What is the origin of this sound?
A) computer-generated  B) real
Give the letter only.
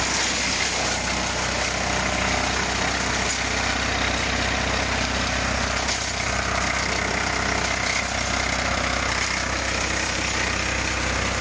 B